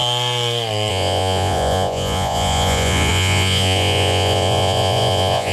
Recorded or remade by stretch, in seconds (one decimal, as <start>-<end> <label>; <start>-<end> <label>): 0.0-0.9 recorded; 0.9-5.5 remade